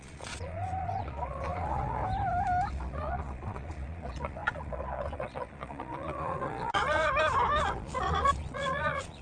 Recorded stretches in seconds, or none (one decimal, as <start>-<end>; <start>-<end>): 2.0-2.7; 7.0-7.6